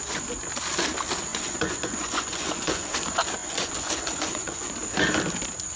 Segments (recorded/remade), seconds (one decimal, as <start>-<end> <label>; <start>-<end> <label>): 0.0-1.3 recorded; 1.3-2.9 remade; 2.9-3.4 recorded; 3.4-4.7 remade; 4.7-5.8 recorded